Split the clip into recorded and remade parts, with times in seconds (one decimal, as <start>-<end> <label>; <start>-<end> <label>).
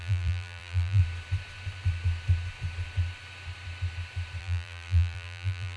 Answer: 0.0-1.0 remade; 1.0-4.4 recorded; 4.4-5.8 remade